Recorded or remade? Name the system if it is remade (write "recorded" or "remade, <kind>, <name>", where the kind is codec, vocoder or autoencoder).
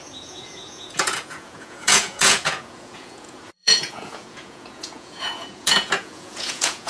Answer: remade, vocoder, Vocos